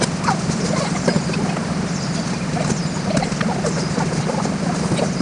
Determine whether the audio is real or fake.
real